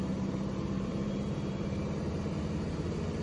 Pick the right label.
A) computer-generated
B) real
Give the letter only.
A